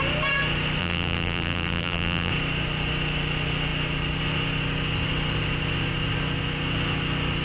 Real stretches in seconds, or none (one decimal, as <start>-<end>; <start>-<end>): 0.0-0.8; 2.3-7.4